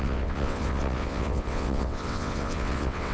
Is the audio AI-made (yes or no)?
yes